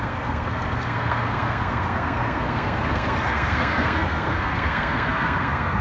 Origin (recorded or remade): remade